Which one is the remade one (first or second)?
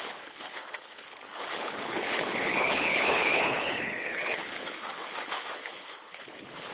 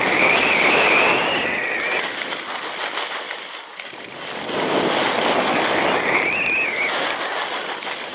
first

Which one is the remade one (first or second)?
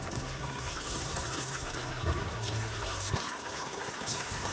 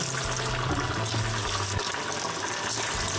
first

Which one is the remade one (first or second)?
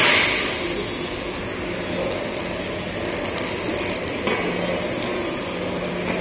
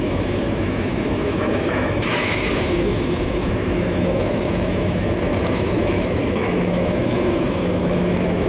second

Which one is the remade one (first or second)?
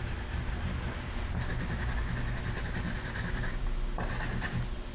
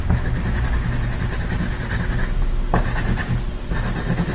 first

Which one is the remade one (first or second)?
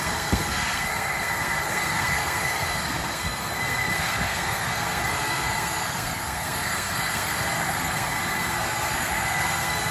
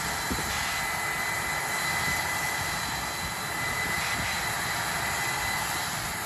first